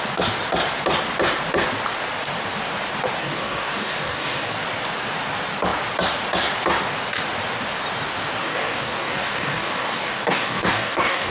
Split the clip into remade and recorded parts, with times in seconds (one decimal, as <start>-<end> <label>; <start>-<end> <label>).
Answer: 0.0-3.2 recorded; 3.2-4.5 remade; 4.5-8.4 recorded; 8.4-11.3 remade